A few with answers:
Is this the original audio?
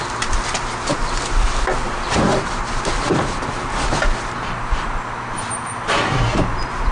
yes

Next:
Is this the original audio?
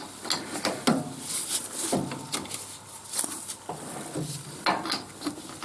yes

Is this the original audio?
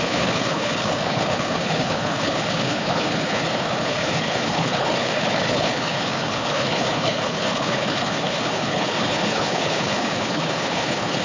no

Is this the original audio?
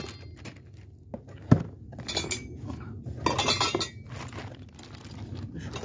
yes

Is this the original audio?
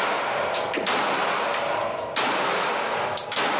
yes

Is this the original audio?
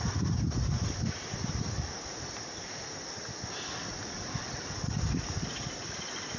yes